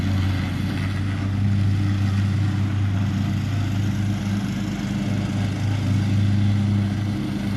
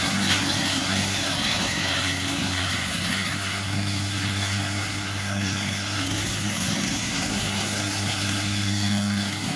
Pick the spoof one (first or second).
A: second